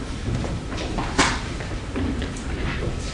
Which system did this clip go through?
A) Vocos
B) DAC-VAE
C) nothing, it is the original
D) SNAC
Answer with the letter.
C